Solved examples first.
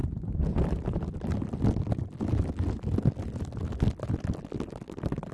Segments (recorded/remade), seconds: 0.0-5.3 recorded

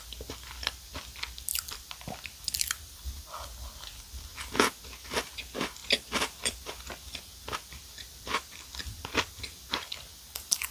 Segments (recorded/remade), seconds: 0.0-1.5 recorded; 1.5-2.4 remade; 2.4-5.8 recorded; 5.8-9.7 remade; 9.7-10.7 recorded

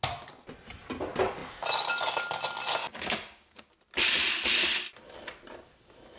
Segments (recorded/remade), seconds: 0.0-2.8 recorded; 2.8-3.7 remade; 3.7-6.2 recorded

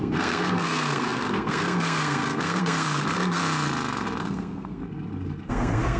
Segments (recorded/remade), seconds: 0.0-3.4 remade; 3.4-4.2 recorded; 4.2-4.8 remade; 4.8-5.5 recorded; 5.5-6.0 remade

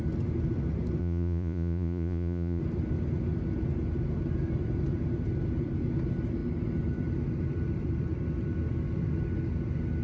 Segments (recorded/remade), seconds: 0.0-1.0 recorded; 1.0-2.6 remade; 2.6-10.0 recorded